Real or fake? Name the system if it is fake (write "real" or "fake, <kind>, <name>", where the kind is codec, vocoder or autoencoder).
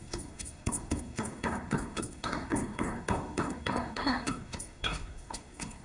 fake, codec, SNAC